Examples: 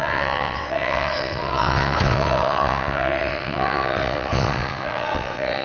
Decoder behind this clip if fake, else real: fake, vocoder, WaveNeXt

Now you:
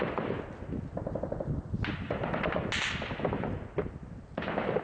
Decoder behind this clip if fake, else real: real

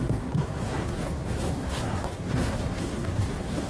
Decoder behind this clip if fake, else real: fake, codec, SNAC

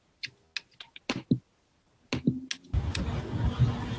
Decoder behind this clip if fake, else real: real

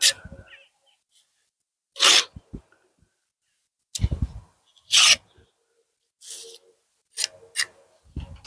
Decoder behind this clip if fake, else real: real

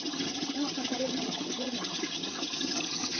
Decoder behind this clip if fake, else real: fake, vocoder, HiFi-GAN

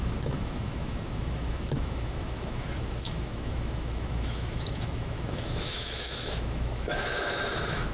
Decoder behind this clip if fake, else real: fake, autoencoder, DAC-VAE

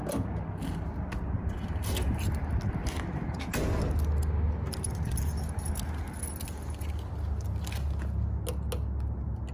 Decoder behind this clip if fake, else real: real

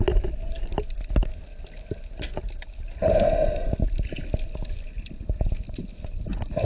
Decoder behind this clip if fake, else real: real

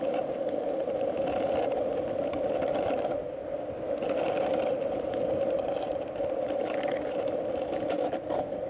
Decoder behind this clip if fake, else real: fake, vocoder, BigVGAN v2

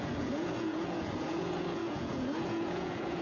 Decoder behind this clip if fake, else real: fake, vocoder, Vocos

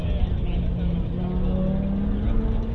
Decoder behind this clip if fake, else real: real